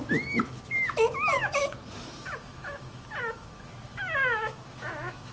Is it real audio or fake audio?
fake